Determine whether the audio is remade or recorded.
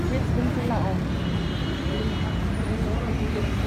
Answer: recorded